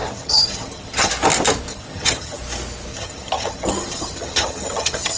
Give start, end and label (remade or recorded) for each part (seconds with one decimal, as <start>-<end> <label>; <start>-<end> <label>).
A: 0.0-1.1 remade; 1.1-1.7 recorded; 1.7-2.4 remade; 2.4-2.9 recorded; 2.9-5.2 remade